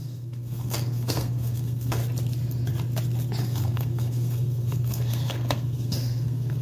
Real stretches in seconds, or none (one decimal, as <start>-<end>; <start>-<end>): 2.0-3.4